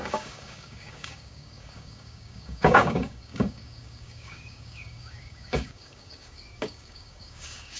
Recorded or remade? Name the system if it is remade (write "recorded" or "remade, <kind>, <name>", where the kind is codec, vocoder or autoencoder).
remade, codec, DAC